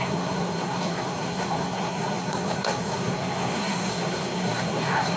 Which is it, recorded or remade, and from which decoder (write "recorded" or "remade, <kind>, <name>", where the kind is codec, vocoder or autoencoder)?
remade, codec, SNAC